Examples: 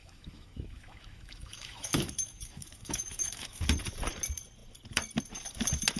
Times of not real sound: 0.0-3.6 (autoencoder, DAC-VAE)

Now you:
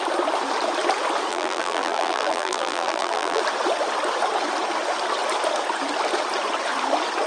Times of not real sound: 1.3-3.4 (vocoder, BigVGAN v2)